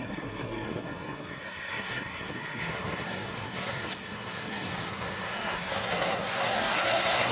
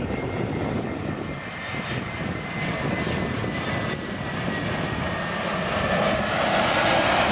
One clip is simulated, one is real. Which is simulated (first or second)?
first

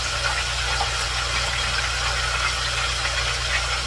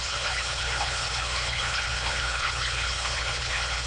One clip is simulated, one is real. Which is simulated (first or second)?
second